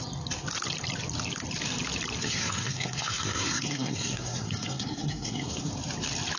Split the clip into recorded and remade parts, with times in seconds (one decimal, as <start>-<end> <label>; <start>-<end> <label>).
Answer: 0.0-2.2 recorded; 2.2-5.7 remade; 5.7-6.4 recorded